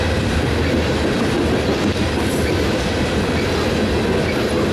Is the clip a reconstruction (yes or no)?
no